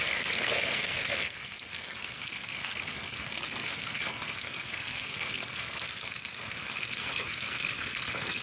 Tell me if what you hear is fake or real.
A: fake